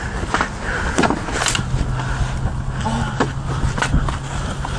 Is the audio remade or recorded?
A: recorded